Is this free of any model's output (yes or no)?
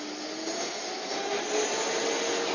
yes